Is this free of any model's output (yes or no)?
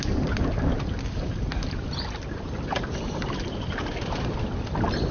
yes